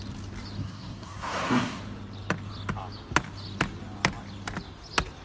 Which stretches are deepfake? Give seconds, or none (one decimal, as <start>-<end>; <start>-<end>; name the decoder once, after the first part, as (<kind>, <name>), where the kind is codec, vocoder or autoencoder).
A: 0.6-1.8 (codec, SNAC)